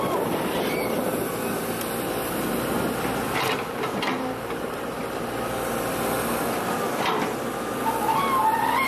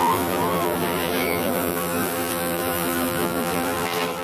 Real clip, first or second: first